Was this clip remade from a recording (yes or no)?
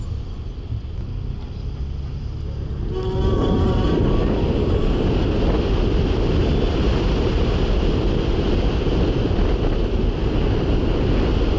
no